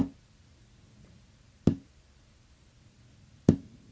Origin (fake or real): real